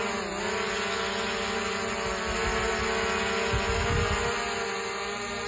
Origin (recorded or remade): recorded